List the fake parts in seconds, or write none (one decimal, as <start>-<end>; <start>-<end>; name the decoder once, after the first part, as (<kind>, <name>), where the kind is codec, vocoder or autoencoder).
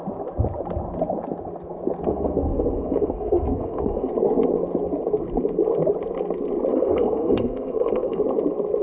2.1-4.1 (codec, SNAC); 6.7-8.2